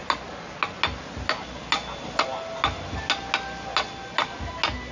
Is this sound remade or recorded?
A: recorded